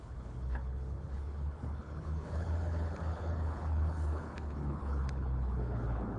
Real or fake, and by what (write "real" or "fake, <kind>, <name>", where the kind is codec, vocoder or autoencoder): fake, codec, HILCodec